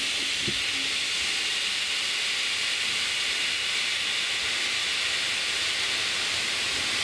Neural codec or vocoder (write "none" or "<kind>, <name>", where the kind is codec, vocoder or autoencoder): none